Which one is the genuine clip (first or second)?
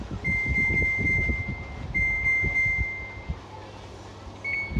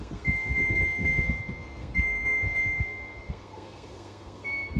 first